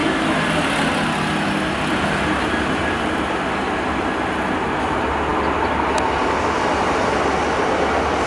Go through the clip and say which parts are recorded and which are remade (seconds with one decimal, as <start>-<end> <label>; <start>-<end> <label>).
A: 0.0-8.3 recorded